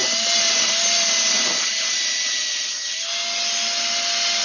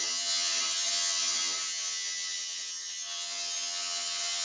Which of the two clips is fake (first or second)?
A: second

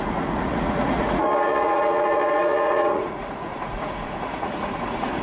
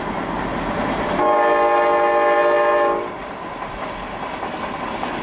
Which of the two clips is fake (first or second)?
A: first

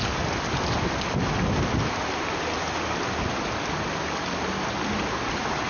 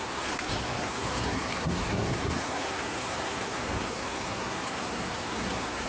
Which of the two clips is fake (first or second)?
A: second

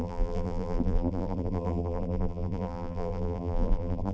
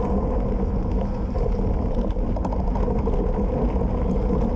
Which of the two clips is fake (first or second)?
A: first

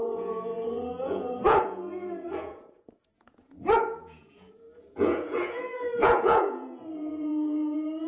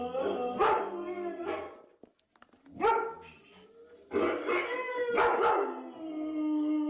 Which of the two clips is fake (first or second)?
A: first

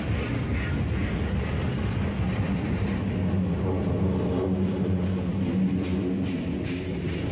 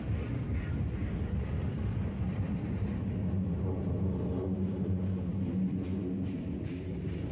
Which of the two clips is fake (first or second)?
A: second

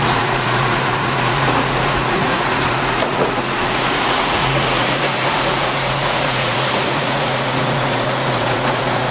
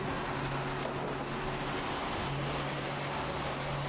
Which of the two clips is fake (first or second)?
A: first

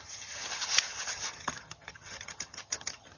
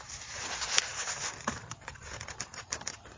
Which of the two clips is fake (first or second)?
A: first